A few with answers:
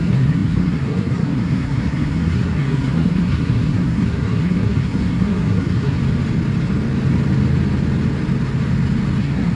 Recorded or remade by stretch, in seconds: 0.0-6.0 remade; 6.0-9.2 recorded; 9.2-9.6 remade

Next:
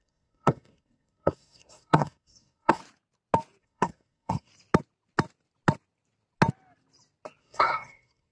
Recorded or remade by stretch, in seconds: 0.0-2.8 remade; 2.8-3.6 recorded; 3.6-4.5 remade; 4.5-7.4 recorded; 7.4-8.3 remade

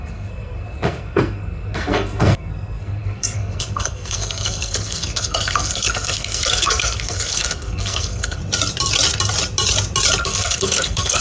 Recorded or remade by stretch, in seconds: 0.0-8.4 remade; 8.4-10.2 recorded; 10.2-11.2 remade

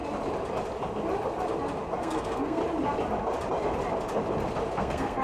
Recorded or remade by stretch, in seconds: 0.0-2.0 recorded; 2.0-2.6 remade; 2.6-4.7 recorded; 4.7-5.2 remade